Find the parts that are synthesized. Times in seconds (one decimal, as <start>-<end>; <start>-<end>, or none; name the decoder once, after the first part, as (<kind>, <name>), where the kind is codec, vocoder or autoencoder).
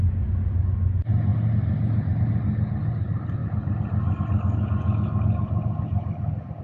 none